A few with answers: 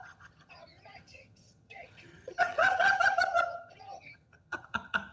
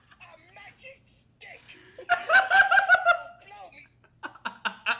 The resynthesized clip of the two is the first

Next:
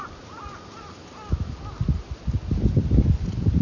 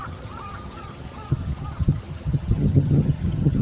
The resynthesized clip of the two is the second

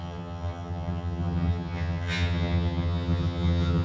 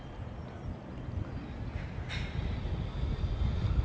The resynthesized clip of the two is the first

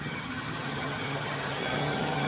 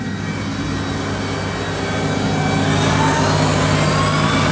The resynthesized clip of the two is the first